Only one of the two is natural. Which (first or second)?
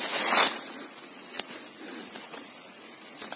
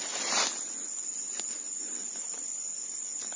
second